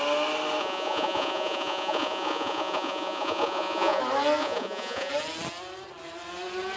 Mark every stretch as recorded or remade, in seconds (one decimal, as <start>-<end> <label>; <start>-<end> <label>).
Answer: 0.0-0.6 recorded; 0.6-4.0 remade; 4.0-4.4 recorded; 4.4-5.1 remade; 5.1-6.8 recorded